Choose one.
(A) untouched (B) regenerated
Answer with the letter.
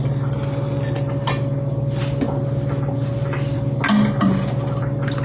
A